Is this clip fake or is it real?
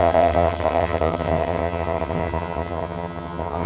fake